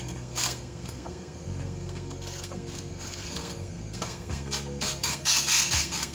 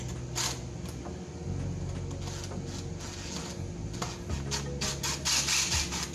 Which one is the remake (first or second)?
first